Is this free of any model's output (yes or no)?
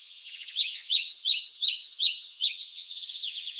no